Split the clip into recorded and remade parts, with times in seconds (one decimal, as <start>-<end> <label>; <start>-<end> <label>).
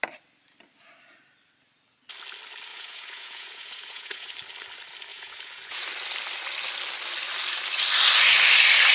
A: 0.0-2.7 recorded; 2.7-4.3 remade; 4.3-5.1 recorded; 5.1-5.8 remade; 5.8-8.9 recorded